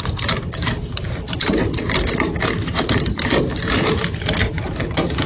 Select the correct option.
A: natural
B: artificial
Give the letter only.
B